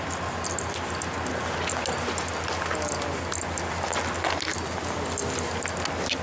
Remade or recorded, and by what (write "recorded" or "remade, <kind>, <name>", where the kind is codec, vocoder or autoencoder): recorded